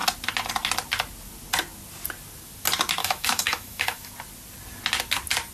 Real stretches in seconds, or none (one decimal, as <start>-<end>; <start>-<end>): 0.0-3.0; 4.1-5.5